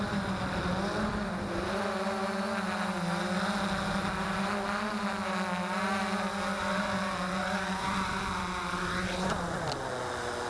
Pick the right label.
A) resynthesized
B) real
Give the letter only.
B